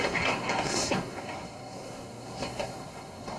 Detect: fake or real fake